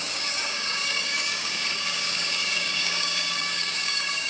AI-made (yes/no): yes